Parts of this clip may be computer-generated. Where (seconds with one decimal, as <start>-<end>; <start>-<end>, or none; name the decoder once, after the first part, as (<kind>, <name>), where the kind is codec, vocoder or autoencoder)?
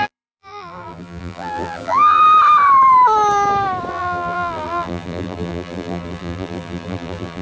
0.0-2.2 (vocoder, BigVGAN v2); 3.9-7.4